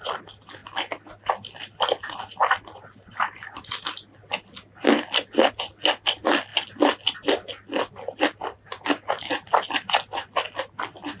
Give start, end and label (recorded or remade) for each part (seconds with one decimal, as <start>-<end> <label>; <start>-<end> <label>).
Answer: 0.0-11.2 recorded